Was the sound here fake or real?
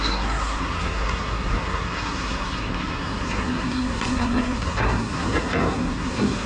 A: fake